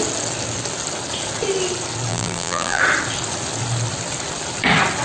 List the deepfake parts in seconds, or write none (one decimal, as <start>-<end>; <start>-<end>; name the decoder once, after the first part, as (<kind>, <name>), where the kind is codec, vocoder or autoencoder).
2.1-2.8 (vocoder, BigVGAN v2)